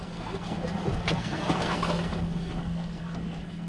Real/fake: fake